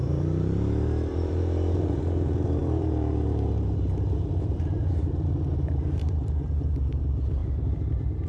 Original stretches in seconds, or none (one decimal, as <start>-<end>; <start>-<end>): none